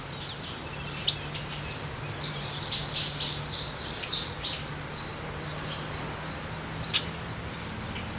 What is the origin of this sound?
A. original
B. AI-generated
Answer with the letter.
A